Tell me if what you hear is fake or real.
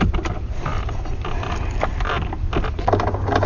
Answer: real